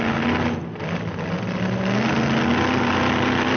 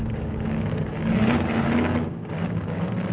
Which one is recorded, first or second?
first